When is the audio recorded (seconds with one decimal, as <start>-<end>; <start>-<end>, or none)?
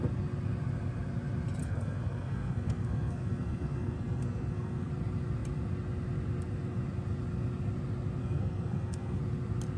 0.0-1.6; 4.9-8.2; 9.2-9.8